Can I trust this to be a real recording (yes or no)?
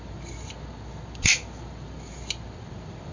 yes